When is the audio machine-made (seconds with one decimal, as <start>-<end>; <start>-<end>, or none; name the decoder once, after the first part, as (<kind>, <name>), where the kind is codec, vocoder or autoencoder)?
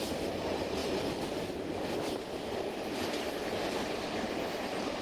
0.0-0.8 (vocoder, BigVGAN v2); 2.5-5.0